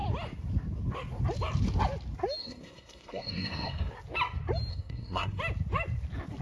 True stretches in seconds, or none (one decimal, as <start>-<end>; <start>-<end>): 0.0-2.4; 3.9-4.7; 5.4-6.4